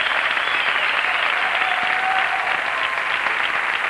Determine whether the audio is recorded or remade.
recorded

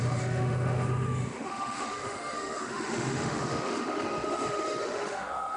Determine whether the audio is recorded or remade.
remade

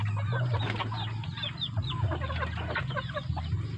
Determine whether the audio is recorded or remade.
recorded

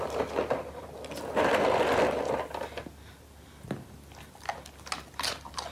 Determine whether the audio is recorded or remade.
recorded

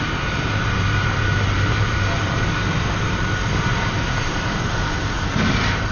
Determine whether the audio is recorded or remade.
remade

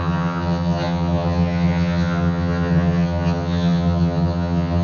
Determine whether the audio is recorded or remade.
remade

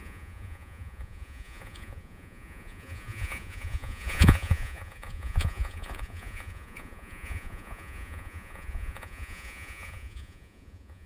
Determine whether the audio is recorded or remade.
remade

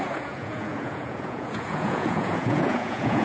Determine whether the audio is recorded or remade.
remade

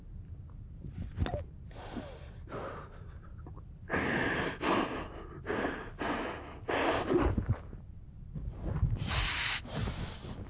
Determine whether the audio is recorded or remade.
recorded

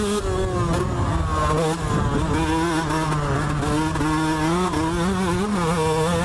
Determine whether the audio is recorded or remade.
recorded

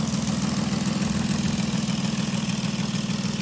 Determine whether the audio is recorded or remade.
recorded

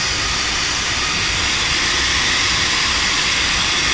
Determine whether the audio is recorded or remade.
recorded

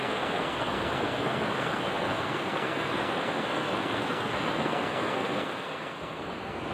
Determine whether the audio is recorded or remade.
remade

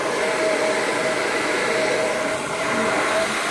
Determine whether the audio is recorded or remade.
recorded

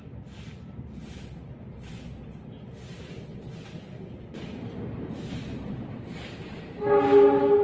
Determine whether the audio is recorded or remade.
recorded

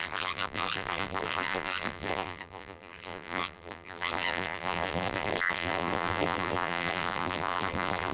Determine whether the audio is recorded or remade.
remade